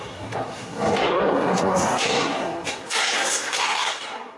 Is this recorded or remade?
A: remade